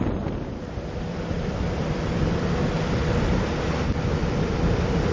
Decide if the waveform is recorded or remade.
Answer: recorded